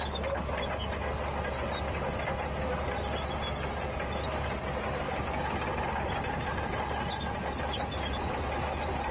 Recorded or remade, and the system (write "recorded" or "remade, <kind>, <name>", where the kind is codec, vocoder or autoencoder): recorded